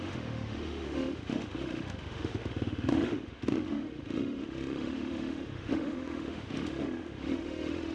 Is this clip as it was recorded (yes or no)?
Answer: no